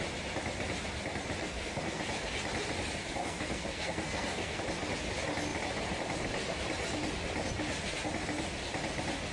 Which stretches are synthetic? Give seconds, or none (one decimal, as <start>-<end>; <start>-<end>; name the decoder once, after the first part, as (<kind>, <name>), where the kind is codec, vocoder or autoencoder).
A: 1.4-2.0 (codec, SNAC); 3.0-4.6